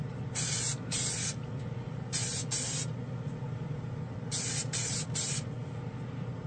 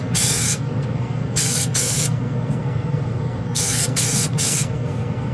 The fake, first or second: second